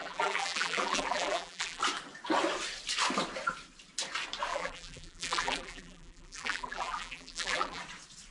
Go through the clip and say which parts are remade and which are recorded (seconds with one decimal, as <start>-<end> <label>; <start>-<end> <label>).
0.0-1.8 remade; 1.8-4.5 recorded; 4.5-7.8 remade; 7.8-8.3 recorded